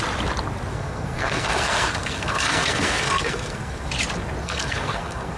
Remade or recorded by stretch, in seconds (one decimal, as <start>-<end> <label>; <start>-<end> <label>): 0.0-0.7 recorded; 0.7-3.9 remade; 3.9-4.4 recorded; 4.4-5.4 remade

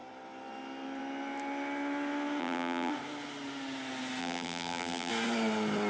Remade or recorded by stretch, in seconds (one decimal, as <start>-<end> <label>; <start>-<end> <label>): 0.0-2.4 recorded; 2.4-2.9 remade; 2.9-4.2 recorded; 4.2-5.1 remade; 5.1-5.9 recorded

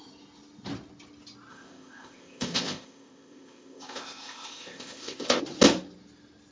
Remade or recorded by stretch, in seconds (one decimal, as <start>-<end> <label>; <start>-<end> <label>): 0.0-1.5 recorded; 1.5-5.4 remade; 5.4-6.5 recorded

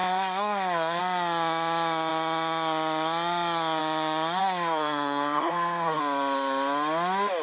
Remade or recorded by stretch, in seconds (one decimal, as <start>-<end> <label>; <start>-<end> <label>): 0.0-1.0 remade; 1.0-4.4 recorded; 4.4-6.0 remade; 6.0-7.4 recorded

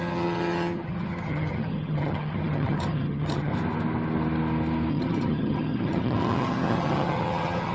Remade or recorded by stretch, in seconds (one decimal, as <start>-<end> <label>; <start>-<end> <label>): 0.0-3.5 remade; 3.5-4.9 recorded; 4.9-7.7 remade

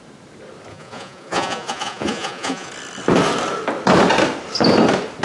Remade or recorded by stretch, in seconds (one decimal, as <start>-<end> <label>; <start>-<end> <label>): 0.0-0.7 recorded; 0.7-2.7 remade; 2.7-5.2 recorded

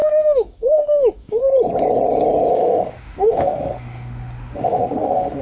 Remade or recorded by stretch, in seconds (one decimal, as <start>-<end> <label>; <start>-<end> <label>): 0.0-1.4 remade; 1.4-2.5 recorded; 2.5-5.4 remade